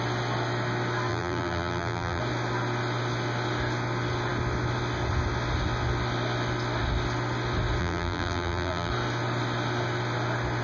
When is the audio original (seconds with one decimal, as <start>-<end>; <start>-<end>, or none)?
0.0-1.1; 2.2-7.8; 8.9-10.6